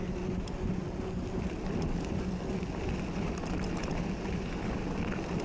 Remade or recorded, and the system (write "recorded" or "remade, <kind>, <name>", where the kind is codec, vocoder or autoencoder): recorded